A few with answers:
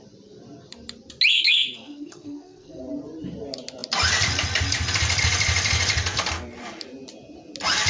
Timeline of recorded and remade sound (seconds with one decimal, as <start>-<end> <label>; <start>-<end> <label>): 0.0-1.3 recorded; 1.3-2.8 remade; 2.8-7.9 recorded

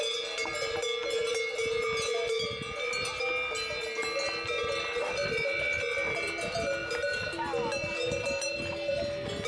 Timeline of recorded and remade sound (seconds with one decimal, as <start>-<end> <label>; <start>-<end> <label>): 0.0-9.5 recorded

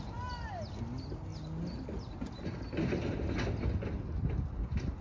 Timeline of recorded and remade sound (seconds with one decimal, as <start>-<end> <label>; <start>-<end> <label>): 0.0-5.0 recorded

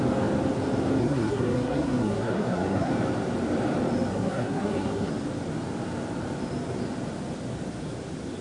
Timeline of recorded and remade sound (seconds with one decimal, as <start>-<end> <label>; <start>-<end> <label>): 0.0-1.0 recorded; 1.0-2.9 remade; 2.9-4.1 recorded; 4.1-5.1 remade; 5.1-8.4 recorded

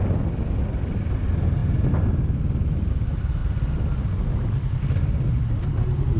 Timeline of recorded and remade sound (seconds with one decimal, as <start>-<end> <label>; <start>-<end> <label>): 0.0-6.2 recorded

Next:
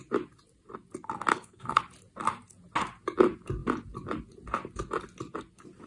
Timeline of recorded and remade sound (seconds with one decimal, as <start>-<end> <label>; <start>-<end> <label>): 0.0-1.3 recorded; 1.3-1.8 remade; 1.8-5.9 recorded

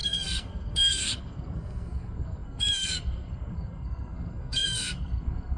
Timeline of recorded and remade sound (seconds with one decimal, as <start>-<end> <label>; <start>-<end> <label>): 0.0-5.6 remade

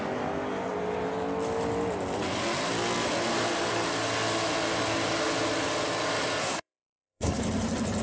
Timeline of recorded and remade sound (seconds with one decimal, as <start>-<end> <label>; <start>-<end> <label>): 0.0-6.4 recorded; 6.4-7.4 remade; 7.4-8.0 recorded